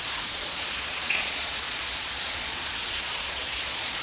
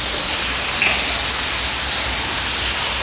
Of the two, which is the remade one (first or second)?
first